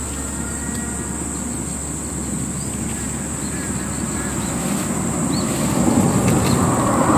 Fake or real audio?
real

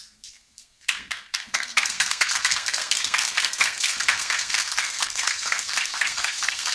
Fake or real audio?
fake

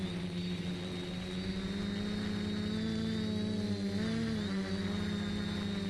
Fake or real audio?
real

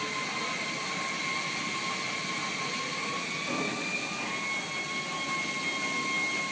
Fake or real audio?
real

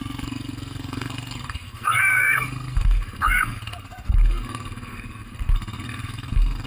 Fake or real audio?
fake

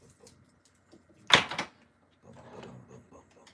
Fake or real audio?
real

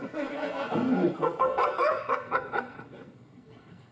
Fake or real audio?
fake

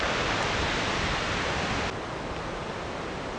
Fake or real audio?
real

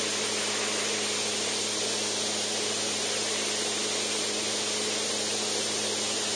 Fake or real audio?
real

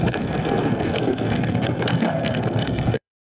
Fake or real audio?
fake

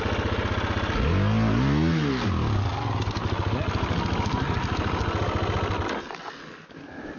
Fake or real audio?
real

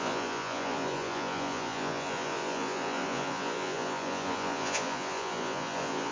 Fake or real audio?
fake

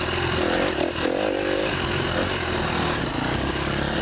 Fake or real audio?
real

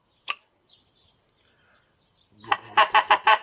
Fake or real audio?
real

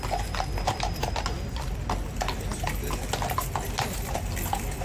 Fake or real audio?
real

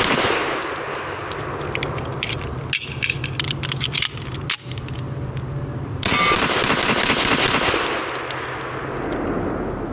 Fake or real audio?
real